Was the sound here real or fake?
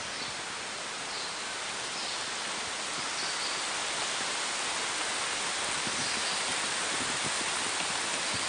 real